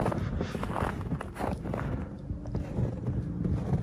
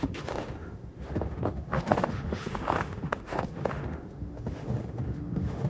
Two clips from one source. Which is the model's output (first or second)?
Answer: second